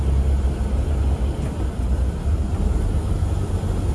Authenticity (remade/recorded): recorded